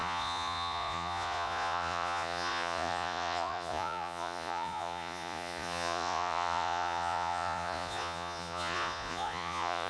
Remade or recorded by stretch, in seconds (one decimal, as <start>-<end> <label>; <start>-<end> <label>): 0.0-9.9 remade